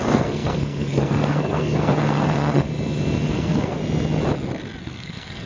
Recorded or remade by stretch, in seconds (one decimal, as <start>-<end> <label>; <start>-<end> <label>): 0.0-2.7 remade; 2.7-3.3 recorded; 3.3-3.8 remade; 3.8-4.8 recorded; 4.8-5.5 remade